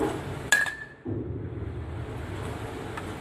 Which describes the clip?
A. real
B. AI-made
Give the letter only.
A